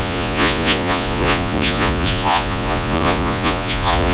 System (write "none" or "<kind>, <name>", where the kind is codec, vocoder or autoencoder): vocoder, Vocos